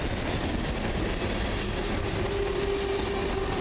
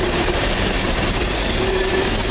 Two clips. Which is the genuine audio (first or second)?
first